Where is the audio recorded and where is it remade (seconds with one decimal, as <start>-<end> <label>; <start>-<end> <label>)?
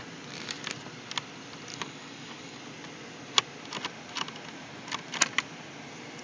0.0-1.7 recorded; 1.7-2.6 remade; 2.6-6.2 recorded